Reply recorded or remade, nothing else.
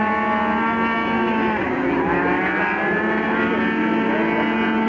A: recorded